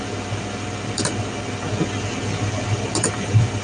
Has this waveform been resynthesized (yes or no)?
no